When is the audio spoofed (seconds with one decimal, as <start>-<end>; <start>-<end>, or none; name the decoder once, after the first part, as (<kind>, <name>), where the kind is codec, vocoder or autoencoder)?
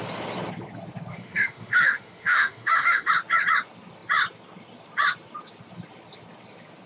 1.1-3.1 (autoencoder, DAC-VAE)